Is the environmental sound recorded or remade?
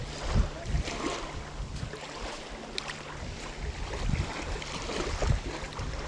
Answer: recorded